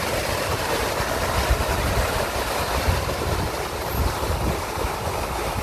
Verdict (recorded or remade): recorded